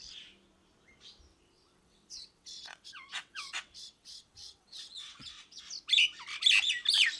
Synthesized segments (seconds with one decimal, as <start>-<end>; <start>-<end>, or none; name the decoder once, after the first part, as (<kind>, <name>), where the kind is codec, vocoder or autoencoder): 1.3-5.6 (vocoder, WaveNeXt)